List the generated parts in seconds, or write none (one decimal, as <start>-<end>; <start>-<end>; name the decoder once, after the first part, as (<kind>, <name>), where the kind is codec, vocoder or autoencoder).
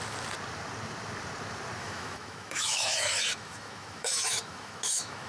1.8-5.3 (autoencoder, DAC-VAE)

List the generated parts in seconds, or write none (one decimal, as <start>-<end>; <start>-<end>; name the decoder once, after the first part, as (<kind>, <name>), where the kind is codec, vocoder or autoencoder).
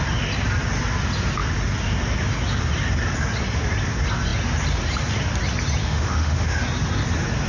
5.8-6.6 (autoencoder, DAC-VAE)